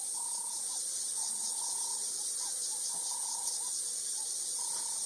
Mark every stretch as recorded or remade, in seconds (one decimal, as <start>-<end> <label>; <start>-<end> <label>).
0.0-5.1 recorded